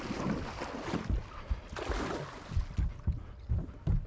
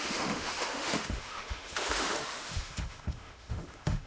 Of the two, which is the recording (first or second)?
first